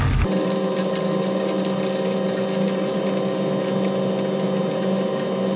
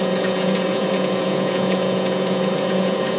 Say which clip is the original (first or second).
first